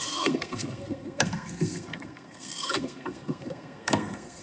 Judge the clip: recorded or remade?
remade